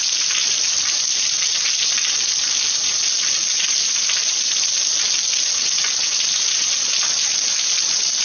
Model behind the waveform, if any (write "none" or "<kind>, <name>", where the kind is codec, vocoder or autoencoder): none